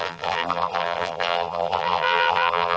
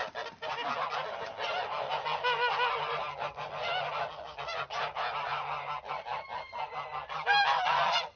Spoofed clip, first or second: first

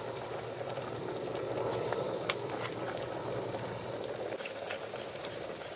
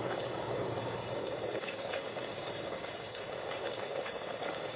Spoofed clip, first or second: second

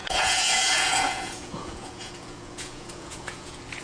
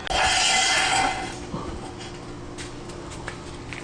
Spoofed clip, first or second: first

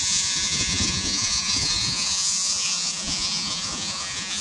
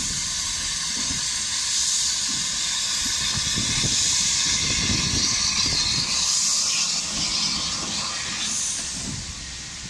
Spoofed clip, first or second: first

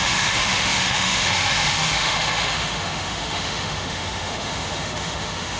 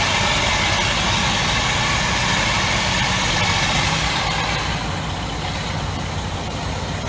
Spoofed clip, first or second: first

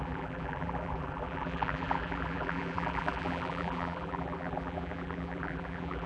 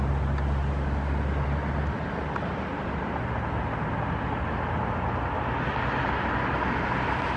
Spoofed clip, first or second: first